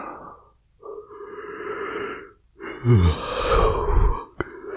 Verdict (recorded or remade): recorded